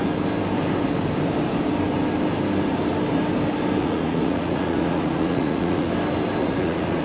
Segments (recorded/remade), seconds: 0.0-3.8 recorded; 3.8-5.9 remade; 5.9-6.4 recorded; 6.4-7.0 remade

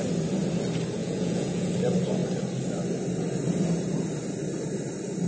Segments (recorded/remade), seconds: 0.0-1.0 recorded; 1.0-1.7 remade; 1.7-5.3 recorded